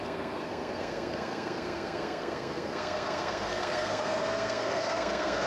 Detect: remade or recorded remade